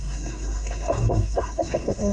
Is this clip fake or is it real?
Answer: fake